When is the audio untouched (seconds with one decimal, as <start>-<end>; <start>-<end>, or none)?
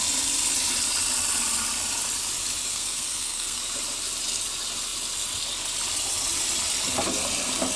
0.0-2.7; 3.6-7.8